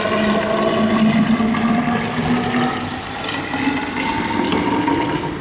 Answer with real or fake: real